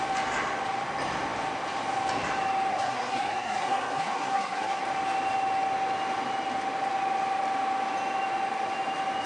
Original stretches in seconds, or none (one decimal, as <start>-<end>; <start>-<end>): 0.0-2.7; 4.8-9.3